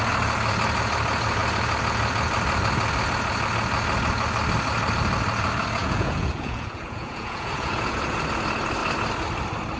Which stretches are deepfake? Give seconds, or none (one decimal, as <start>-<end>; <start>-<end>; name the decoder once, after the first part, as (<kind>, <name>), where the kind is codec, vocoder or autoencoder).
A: 5.8-8.2 (vocoder, Vocos)